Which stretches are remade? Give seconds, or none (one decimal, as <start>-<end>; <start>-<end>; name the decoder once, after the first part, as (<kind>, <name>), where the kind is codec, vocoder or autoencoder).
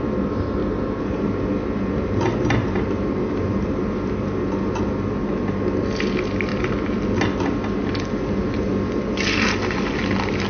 0.6-1.3 (vocoder, BigVGAN v2); 2.6-4.4